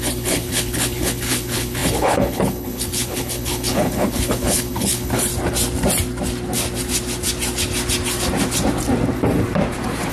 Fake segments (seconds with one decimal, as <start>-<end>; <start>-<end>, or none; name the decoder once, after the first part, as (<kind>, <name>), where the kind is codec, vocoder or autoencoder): 0.0-5.3 (codec, HILCodec)